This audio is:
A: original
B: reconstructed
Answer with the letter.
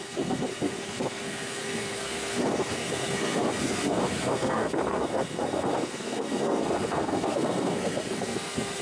B